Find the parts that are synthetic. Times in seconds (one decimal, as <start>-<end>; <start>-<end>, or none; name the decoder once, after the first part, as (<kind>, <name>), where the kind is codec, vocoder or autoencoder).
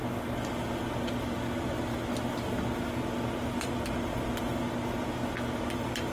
none